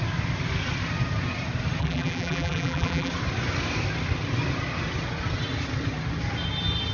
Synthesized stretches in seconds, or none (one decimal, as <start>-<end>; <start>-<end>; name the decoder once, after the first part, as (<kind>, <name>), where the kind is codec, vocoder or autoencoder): 1.8-3.1 (vocoder, BigVGAN v2)